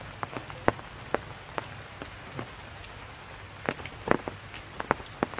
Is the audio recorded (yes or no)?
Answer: yes